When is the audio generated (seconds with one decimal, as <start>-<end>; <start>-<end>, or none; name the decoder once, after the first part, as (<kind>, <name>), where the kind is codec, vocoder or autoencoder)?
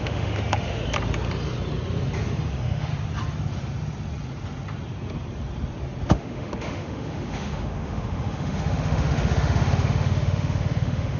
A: 0.0-0.8 (autoencoder, DAC-VAE); 2.5-2.9; 6.1-11.2